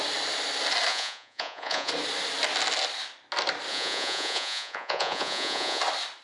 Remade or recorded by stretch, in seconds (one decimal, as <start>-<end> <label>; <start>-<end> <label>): 0.0-0.9 recorded; 0.9-1.9 remade; 1.9-3.7 recorded; 3.7-5.8 remade; 5.8-6.2 recorded

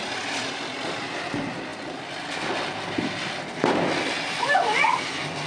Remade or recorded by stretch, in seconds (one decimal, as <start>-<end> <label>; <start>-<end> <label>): 0.0-5.5 recorded